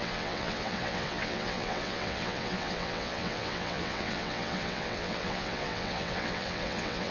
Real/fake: fake